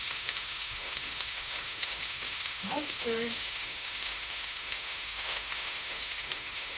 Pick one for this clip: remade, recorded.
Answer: remade